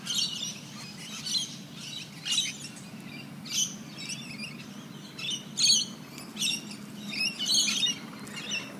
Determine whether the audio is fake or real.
real